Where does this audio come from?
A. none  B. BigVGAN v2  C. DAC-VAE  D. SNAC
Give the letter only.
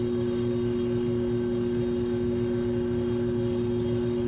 A